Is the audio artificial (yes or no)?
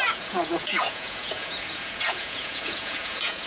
yes